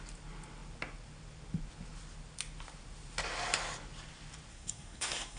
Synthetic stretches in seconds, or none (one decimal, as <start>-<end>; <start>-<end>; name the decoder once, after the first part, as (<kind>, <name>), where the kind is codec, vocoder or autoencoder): 4.5-5.4 (codec, SNAC)